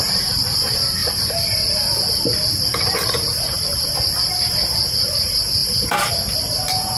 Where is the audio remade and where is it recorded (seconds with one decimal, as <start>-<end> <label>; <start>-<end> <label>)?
0.0-3.7 remade; 3.7-4.2 recorded; 4.2-7.0 remade